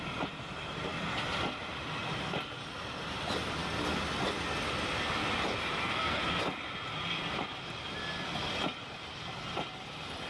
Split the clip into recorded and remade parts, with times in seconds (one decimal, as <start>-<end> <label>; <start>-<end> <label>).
0.0-5.8 recorded; 5.8-6.4 remade; 6.4-10.3 recorded

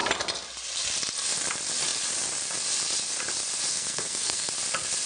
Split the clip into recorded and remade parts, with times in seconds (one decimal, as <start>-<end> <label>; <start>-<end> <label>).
0.0-3.7 recorded; 3.7-4.5 remade; 4.5-5.1 recorded